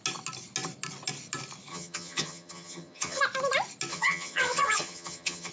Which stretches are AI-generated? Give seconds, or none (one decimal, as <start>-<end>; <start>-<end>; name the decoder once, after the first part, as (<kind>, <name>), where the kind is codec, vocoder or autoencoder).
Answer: 1.7-3.2 (vocoder, HiFi-GAN); 3.9-5.5